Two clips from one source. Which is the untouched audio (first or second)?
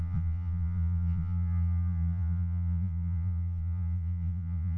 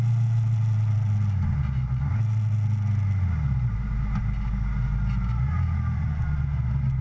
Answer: second